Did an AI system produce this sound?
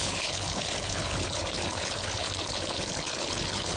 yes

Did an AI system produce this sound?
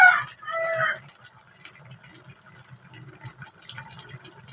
no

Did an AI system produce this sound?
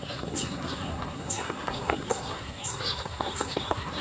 yes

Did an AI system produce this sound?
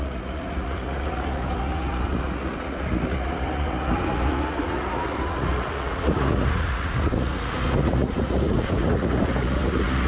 yes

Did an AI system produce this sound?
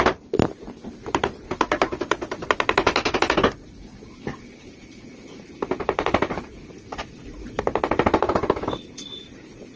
no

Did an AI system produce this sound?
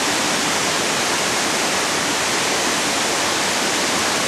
no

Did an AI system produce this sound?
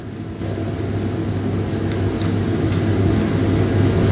no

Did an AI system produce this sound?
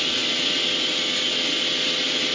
no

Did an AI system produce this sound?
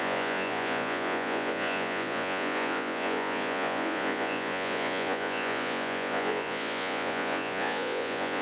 yes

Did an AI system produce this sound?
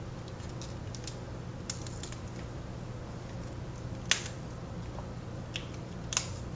no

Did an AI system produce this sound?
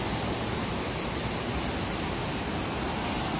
no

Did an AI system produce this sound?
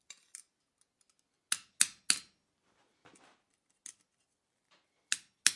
no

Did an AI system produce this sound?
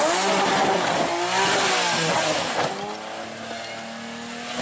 no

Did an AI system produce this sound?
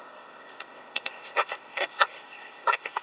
yes